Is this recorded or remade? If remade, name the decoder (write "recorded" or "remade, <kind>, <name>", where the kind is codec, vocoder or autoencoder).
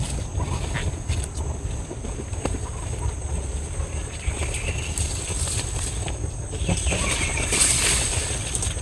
remade, vocoder, BigVGAN v2